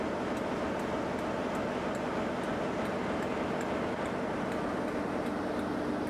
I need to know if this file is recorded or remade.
recorded